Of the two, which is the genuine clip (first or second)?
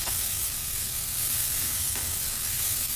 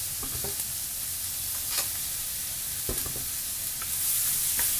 second